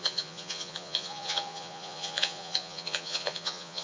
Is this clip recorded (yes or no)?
no